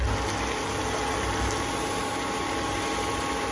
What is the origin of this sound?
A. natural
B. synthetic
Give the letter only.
A